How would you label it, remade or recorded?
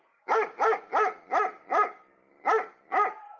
recorded